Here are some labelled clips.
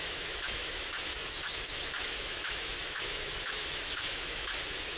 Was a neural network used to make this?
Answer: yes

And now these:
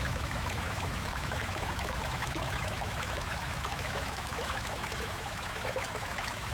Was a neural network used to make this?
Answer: yes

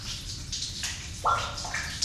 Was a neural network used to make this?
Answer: no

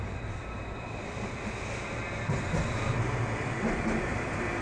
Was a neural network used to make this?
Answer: no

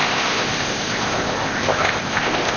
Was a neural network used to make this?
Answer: yes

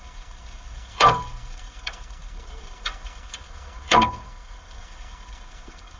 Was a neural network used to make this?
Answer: yes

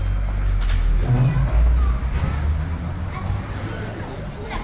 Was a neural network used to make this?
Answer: no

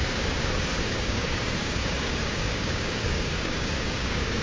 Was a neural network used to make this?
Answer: yes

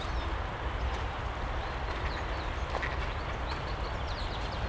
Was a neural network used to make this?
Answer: no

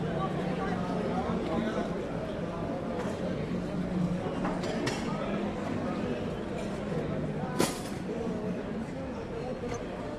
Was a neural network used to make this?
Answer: no